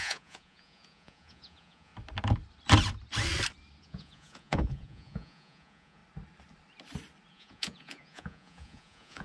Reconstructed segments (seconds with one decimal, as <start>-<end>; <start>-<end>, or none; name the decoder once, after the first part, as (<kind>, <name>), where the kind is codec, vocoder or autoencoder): 0.0-1.9 (vocoder, Vocos); 3.8-6.0; 7.3-9.2